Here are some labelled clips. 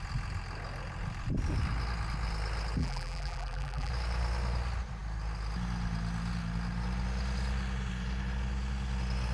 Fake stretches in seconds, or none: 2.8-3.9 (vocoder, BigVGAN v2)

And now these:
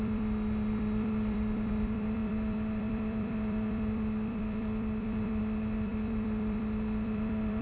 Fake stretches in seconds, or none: 0.0-7.6 (vocoder, BigVGAN v2)

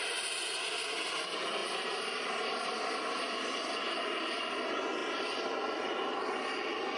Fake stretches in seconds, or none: 1.6-3.5 (vocoder, BigVGAN v2)

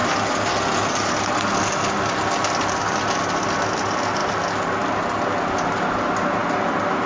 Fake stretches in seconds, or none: 6.4-7.1 (vocoder, BigVGAN v2)

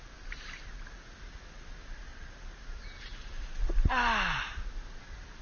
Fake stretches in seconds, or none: 2.1-2.6 (vocoder, BigVGAN v2); 3.1-3.9

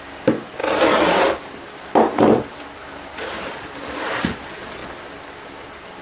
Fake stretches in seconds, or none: 0.6-4.2 (vocoder, BigVGAN v2)